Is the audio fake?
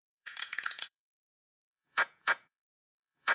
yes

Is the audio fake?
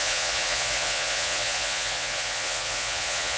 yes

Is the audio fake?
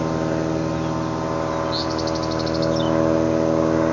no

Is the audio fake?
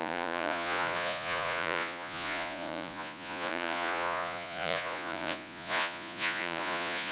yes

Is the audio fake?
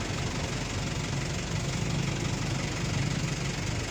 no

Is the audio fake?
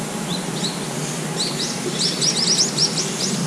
no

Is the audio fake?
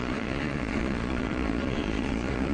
yes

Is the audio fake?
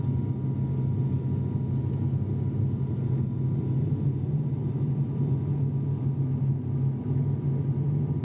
no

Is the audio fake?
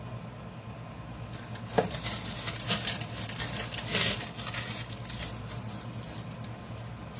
no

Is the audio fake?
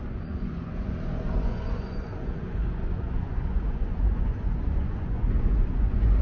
yes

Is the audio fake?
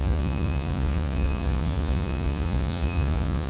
yes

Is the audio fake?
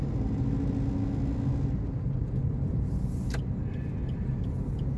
no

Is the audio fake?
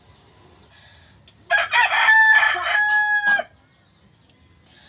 no